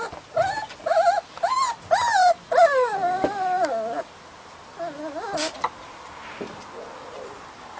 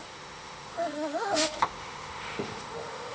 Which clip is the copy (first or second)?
second